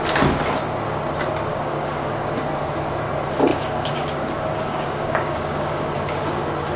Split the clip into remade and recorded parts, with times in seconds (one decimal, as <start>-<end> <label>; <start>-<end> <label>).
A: 0.0-1.5 recorded; 1.5-2.1 remade; 2.1-3.5 recorded; 3.5-5.9 remade; 5.9-6.8 recorded